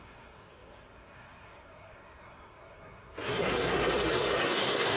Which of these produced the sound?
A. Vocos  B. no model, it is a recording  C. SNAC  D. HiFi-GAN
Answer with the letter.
C